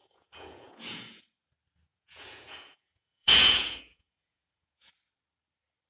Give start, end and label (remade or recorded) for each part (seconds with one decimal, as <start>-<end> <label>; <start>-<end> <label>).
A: 0.0-1.2 remade; 1.2-1.9 recorded; 1.9-4.9 remade; 4.9-5.9 recorded